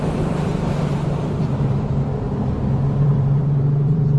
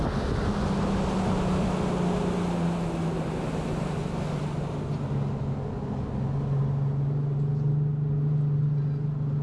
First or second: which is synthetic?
first